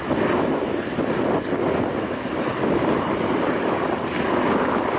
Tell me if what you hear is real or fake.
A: real